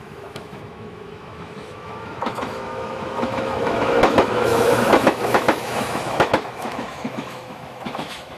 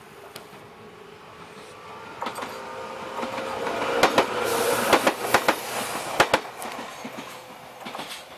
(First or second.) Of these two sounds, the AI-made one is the first